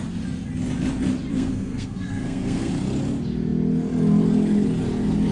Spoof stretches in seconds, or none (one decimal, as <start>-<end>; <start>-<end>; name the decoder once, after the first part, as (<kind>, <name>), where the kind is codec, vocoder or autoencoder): 1.3-2.7 (codec, SNAC)